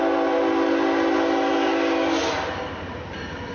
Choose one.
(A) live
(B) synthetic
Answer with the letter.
A